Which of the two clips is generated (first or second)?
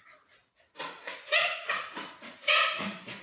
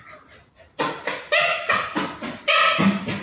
first